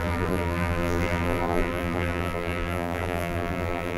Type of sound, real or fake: fake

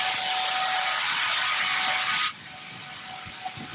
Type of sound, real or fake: real